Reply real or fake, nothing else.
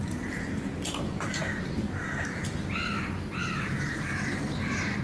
fake